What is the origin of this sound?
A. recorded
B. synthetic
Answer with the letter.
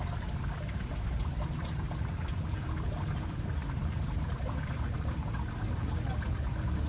B